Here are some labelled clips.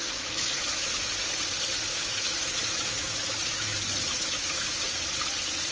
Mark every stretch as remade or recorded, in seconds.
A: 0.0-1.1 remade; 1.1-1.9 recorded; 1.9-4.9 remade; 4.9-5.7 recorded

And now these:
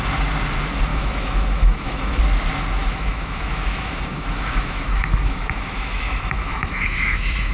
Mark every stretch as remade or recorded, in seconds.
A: 0.0-0.9 recorded; 0.9-2.2 remade; 2.2-2.8 recorded; 2.8-7.5 remade

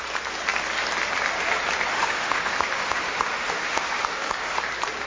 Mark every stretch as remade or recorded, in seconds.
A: 0.0-1.9 recorded; 1.9-4.6 remade; 4.6-5.1 recorded

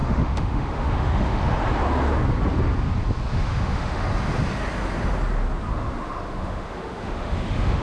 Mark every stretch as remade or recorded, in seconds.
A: 0.0-1.6 remade; 1.6-3.3 recorded; 3.3-4.0 remade; 4.0-5.7 recorded; 5.7-7.8 remade